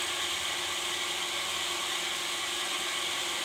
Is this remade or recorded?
recorded